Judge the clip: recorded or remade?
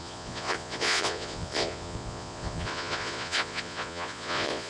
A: remade